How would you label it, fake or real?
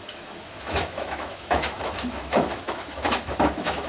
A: fake